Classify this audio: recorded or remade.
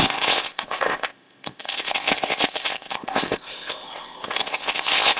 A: remade